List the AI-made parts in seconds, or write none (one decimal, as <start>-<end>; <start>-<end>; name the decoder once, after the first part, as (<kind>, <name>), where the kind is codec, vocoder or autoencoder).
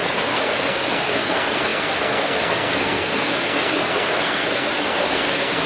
0.0-5.7 (codec, SNAC)